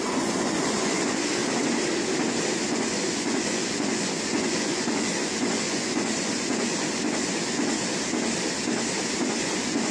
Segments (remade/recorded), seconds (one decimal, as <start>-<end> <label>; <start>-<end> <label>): 0.0-1.4 remade; 1.4-2.7 recorded; 2.7-7.8 remade; 7.8-9.2 recorded; 9.2-9.9 remade